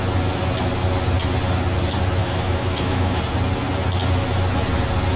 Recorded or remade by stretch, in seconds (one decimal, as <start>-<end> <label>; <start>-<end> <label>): 0.0-2.2 recorded; 2.2-3.2 remade; 3.2-5.2 recorded